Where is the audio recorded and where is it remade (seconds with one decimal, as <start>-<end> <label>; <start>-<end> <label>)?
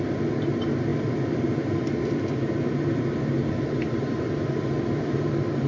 0.0-5.7 recorded